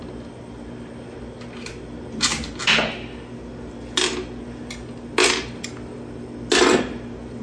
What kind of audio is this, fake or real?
real